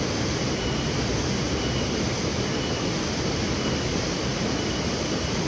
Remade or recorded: recorded